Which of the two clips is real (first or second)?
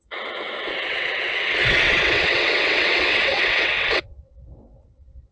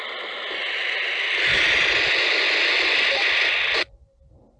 second